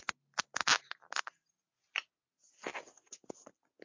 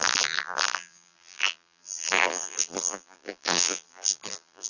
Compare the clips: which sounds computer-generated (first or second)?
second